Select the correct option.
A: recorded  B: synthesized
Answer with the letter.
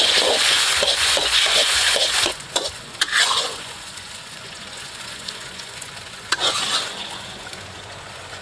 B